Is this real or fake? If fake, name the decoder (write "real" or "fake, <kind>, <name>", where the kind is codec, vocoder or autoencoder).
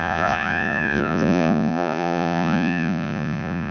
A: fake, vocoder, Vocos